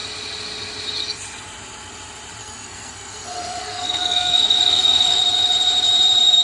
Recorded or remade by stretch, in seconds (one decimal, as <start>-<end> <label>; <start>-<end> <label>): 0.0-2.4 recorded; 2.4-5.2 remade; 5.2-6.4 recorded